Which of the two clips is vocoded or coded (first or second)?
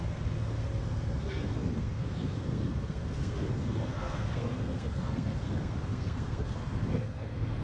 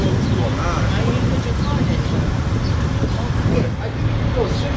first